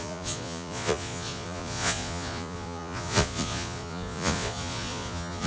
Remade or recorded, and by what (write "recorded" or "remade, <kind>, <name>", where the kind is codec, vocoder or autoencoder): remade, vocoder, Vocos